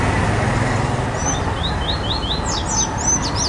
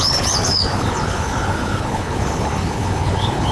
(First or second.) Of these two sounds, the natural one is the first